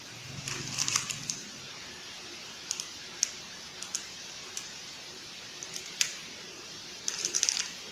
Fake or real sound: fake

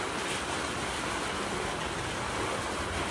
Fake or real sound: real